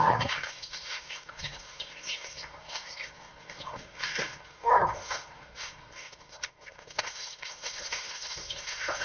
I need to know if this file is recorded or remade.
remade